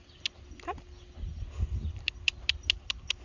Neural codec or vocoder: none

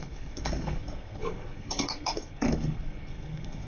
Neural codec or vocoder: codec, SNAC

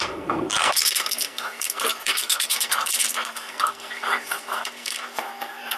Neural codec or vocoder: codec, SNAC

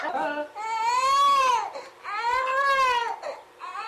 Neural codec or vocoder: none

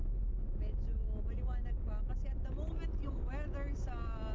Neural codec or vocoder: none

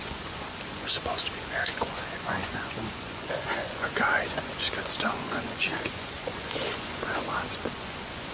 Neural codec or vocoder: vocoder, Vocos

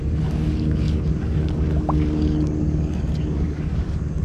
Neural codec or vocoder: codec, DAC